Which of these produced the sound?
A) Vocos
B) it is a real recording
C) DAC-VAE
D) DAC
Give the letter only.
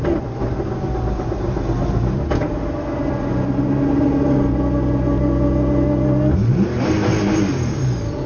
B